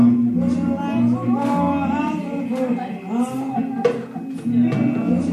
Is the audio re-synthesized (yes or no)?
no